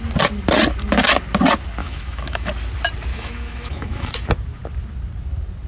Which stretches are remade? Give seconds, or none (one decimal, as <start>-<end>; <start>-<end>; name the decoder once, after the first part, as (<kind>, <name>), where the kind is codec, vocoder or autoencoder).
1.8-2.5 (autoencoder, DAC-VAE); 3.1-4.1